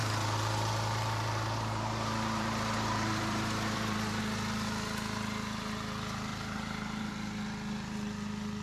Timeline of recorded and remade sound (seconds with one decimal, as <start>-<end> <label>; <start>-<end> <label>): 0.0-4.2 remade; 4.2-6.3 recorded; 6.3-7.1 remade; 7.1-8.6 recorded